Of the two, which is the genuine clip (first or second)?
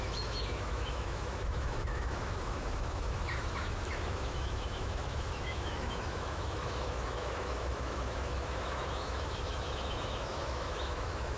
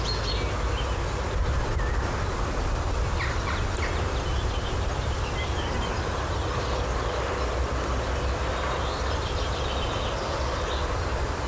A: second